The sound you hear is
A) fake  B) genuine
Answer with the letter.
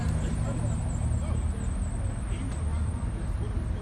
B